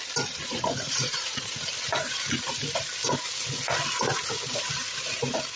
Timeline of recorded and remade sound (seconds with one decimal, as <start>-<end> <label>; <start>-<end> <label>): 0.0-0.4 recorded; 0.4-1.7 remade; 1.7-5.6 recorded